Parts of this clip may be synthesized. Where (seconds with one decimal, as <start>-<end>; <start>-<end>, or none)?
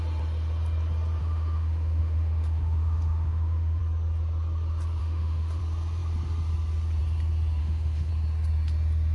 1.2-3.8; 5.0-5.6; 7.6-8.1